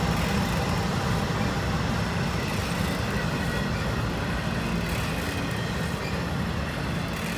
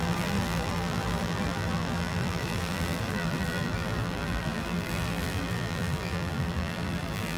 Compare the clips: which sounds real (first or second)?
first